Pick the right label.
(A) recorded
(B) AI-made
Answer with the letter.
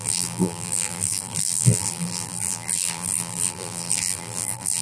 B